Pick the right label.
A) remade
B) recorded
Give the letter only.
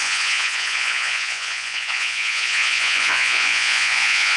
A